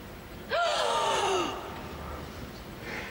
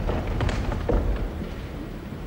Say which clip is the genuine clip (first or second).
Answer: first